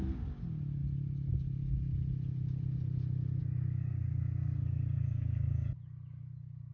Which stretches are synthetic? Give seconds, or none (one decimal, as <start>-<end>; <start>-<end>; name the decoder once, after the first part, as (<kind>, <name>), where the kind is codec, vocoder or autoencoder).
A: 3.4-5.7 (codec, DAC)